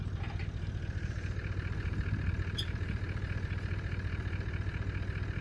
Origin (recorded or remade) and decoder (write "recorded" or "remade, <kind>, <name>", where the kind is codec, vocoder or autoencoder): recorded